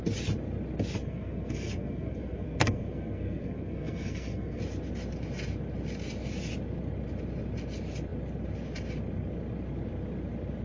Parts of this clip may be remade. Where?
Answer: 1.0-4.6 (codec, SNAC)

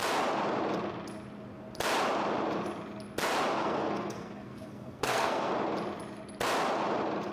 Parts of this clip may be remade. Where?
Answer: 3.6-5.5 (codec, SNAC)

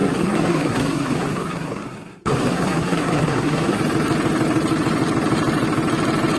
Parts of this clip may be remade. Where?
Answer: 0.0-3.8 (codec, SNAC)

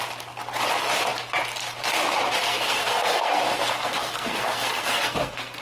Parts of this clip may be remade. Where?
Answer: 2.4-5.6 (codec, SNAC)

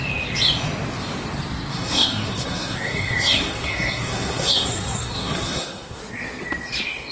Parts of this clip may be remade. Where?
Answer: 1.7-6.0 (codec, SNAC)

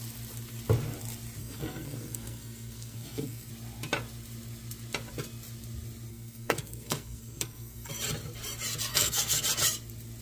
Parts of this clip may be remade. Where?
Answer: 1.4-3.5 (codec, SNAC); 6.1-7.9; 8.9-9.4

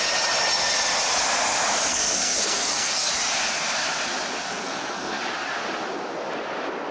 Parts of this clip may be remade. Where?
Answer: 1.9-3.1 (codec, SNAC); 4.5-5.2

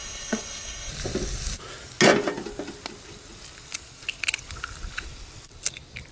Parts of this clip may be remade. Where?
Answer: 0.0-0.9 (codec, SNAC)